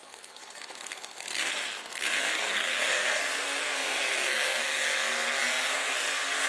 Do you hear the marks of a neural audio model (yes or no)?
yes